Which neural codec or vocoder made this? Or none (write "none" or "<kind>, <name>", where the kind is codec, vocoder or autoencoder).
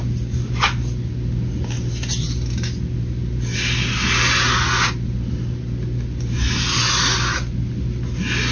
none